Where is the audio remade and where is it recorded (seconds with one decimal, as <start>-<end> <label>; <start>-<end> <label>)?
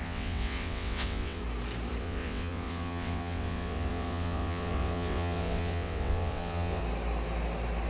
0.0-1.4 remade; 1.4-2.0 recorded; 2.0-6.8 remade; 6.8-7.9 recorded